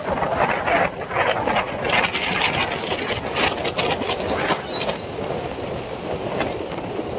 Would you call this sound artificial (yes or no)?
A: no